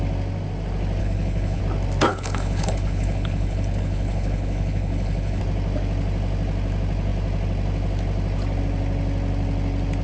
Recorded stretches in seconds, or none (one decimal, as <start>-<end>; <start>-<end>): 0.0-1.0; 1.6-2.1; 5.4-10.0